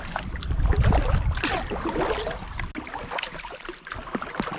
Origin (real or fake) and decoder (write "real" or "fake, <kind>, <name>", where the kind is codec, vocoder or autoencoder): real